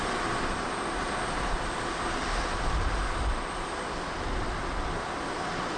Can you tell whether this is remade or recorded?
recorded